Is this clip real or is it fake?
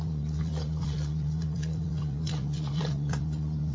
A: fake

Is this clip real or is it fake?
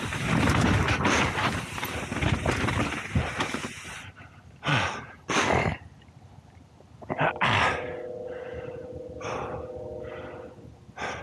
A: real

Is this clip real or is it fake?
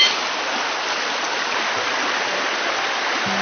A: real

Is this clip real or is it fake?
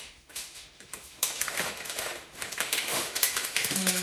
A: fake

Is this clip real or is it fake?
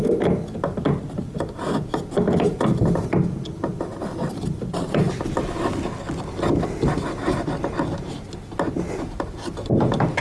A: real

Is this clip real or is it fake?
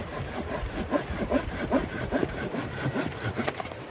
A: fake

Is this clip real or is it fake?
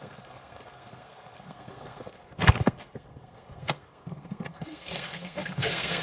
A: fake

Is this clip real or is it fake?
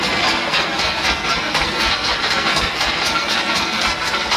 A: fake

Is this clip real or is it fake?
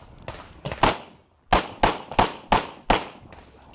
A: real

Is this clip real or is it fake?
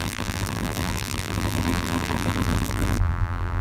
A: fake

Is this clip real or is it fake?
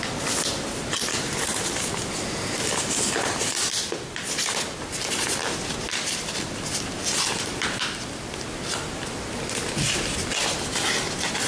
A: real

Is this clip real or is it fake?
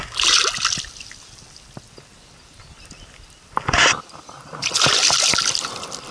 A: real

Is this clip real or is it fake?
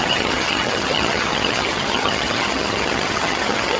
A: fake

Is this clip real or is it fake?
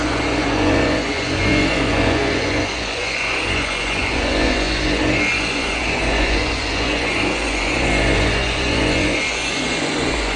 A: fake